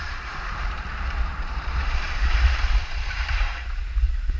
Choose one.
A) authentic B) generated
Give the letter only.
B